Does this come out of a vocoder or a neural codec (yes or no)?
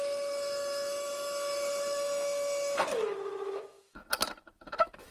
yes